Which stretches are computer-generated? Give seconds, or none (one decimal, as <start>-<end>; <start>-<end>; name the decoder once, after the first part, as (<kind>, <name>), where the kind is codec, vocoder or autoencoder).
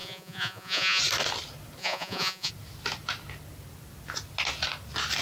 0.0-1.0 (vocoder, Vocos); 1.8-2.5